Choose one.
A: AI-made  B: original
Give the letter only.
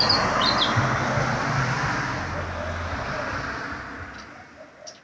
B